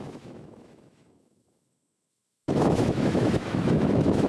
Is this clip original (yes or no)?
no